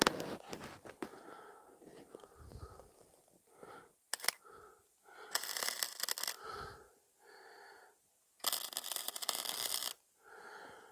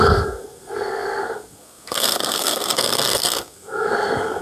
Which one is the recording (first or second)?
first